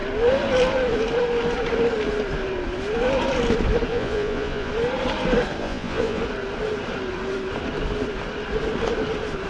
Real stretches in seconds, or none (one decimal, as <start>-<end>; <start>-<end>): 0.0-3.9; 4.7-5.6; 6.2-9.5